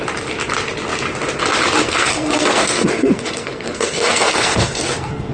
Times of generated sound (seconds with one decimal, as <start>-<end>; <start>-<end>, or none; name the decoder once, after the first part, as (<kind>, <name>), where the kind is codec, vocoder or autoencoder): 1.8-5.3 (codec, SNAC)